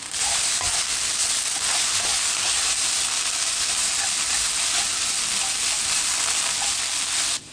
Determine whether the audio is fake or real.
real